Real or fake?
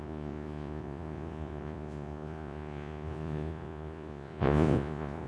fake